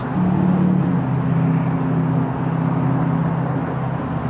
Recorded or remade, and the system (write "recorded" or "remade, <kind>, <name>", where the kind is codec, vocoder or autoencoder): recorded